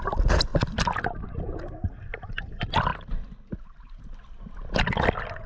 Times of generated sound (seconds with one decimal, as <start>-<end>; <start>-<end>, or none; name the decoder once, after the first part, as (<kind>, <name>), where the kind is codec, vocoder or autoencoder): none